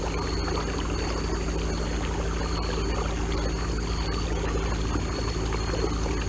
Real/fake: real